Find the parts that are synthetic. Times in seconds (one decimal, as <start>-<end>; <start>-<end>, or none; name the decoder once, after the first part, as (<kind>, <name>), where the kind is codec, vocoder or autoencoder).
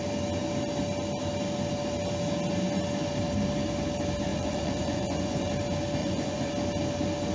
4.3-5.5 (vocoder, Vocos); 6.0-6.5